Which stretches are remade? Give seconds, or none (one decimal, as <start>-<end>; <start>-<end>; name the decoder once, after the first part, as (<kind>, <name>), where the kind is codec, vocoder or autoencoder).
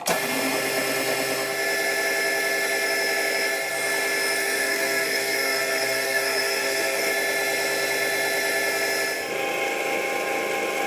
4.4-7.1 (codec, SNAC)